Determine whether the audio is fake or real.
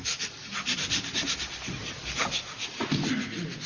real